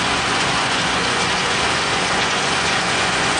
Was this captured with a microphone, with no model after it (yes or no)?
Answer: no